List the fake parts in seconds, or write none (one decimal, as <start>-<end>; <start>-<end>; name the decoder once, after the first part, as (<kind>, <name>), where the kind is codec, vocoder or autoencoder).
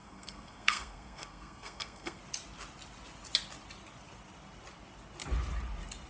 0.0-2.2 (codec, SNAC)